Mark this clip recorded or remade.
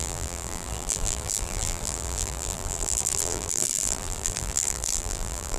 remade